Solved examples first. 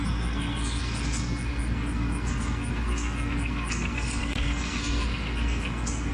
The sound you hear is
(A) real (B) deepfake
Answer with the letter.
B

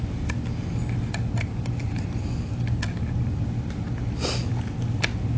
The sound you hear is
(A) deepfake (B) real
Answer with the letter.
B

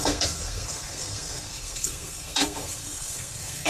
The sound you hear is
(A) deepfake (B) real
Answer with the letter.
A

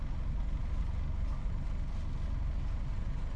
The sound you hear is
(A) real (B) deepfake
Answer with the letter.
A